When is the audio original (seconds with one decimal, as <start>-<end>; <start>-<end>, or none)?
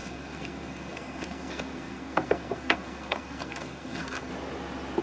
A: 4.3-5.0